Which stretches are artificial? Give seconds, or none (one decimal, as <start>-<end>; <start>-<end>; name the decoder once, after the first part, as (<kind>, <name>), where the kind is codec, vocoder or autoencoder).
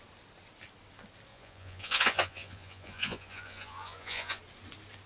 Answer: 1.3-4.4 (vocoder, Vocos)